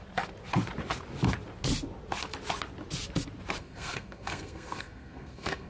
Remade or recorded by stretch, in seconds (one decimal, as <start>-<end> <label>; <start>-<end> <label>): 0.0-3.6 recorded; 3.6-5.7 remade